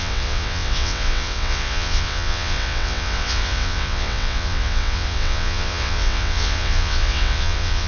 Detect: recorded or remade remade